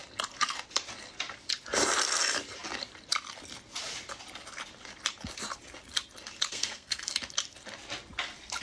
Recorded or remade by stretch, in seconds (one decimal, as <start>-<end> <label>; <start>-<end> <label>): 0.0-6.5 recorded; 6.5-7.0 remade; 7.0-8.6 recorded